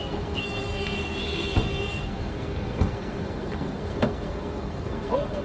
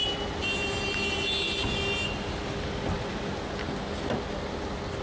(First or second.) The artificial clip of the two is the first